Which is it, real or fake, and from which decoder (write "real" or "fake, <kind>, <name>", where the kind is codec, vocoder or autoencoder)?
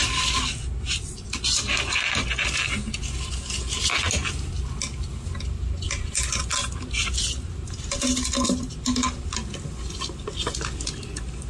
real